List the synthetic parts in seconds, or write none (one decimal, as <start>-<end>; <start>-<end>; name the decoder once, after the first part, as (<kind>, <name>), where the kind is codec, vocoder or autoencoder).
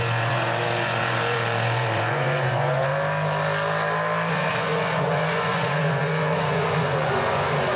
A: 0.0-2.9 (vocoder, Vocos); 4.3-7.8